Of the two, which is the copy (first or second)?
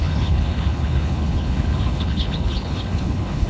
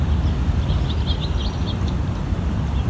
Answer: first